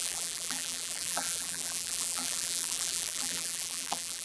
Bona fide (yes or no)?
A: no